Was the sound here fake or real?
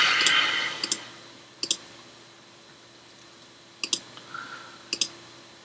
real